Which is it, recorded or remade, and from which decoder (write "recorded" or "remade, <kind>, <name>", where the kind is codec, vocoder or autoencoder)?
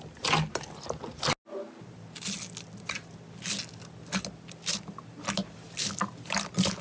recorded